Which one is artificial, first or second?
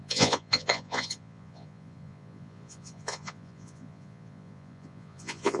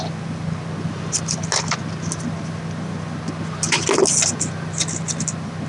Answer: first